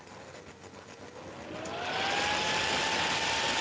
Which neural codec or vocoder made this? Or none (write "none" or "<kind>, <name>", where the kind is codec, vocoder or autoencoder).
none